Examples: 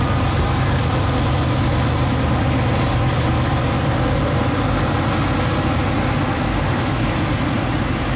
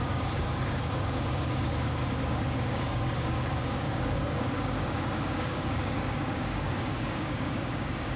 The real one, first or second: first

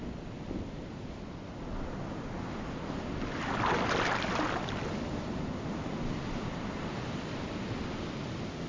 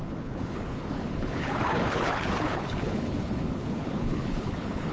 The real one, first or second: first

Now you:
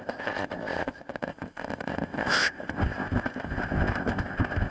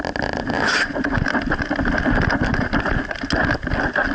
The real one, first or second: second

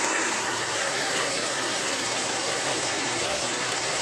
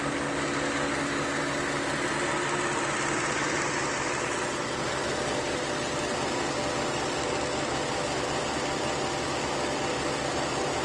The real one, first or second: second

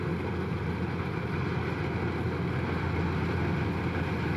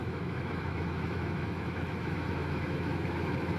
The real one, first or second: first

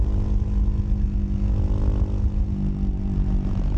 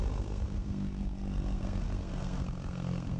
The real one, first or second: first